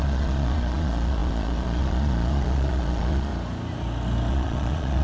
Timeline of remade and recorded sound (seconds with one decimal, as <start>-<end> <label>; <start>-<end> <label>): 0.0-3.3 remade; 3.3-4.3 recorded; 4.3-5.0 remade